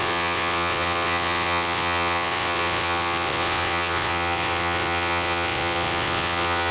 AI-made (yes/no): yes